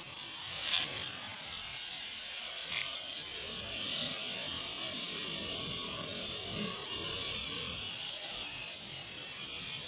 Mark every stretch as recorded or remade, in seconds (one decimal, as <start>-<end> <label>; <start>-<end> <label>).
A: 0.0-1.7 recorded; 1.7-2.7 remade; 2.7-7.2 recorded; 7.2-8.6 remade; 8.6-9.9 recorded

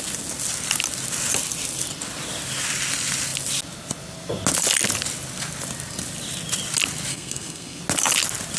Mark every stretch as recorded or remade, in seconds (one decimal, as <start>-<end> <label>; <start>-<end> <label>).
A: 0.0-7.1 recorded; 7.1-7.8 remade; 7.8-8.6 recorded

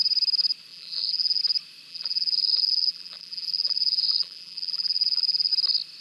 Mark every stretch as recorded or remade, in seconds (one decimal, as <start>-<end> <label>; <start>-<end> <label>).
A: 0.0-0.7 recorded; 0.7-1.4 remade; 1.4-1.9 recorded; 1.9-5.5 remade; 5.5-6.0 recorded